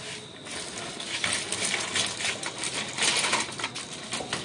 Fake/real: real